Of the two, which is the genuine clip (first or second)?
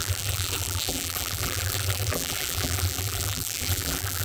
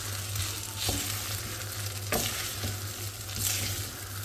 second